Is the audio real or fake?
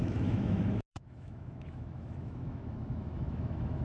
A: fake